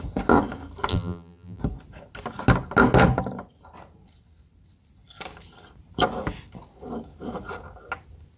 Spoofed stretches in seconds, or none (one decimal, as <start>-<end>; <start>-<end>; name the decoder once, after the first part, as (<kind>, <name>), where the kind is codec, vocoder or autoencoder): 0.9-1.6 (vocoder, BigVGAN v2)